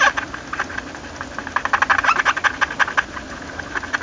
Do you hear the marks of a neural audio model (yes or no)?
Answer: no